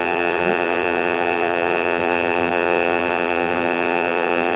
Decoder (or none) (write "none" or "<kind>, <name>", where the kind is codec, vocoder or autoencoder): vocoder, BigVGAN v2